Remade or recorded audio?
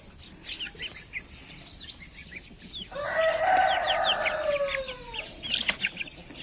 recorded